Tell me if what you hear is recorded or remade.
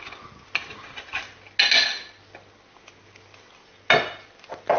recorded